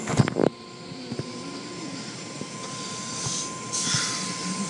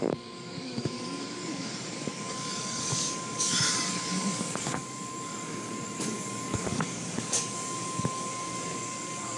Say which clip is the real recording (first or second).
first